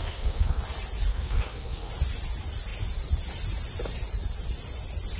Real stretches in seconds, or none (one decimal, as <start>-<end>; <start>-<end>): 0.6-1.1; 1.9-5.2